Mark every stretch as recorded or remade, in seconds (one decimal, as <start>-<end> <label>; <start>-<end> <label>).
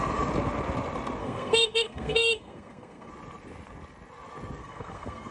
0.0-1.2 recorded; 1.2-3.1 remade; 3.1-4.6 recorded; 4.6-5.3 remade